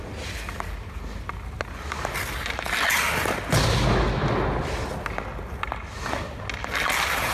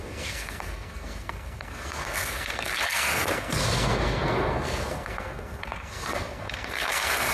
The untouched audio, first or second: first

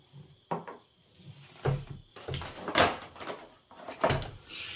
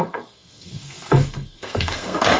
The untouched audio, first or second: first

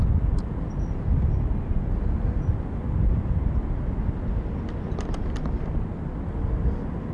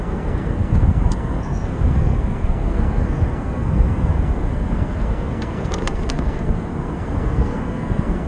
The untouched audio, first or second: first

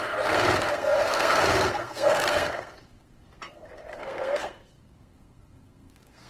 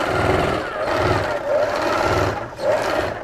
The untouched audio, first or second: second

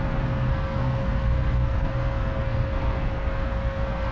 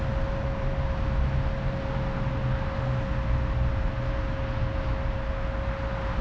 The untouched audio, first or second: second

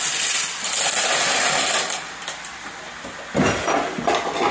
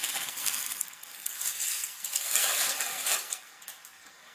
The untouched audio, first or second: first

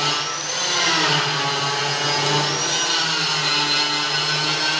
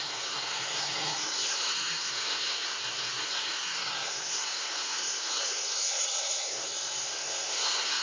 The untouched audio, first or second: first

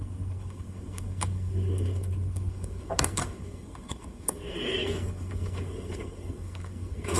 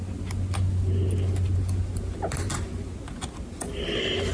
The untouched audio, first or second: second